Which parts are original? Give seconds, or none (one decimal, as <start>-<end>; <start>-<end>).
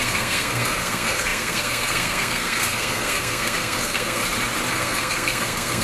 4.2-4.7